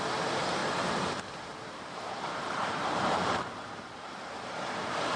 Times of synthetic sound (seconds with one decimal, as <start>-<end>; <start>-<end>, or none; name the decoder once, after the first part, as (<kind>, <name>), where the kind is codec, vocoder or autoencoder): 0.6-3.7 (vocoder, BigVGAN v2)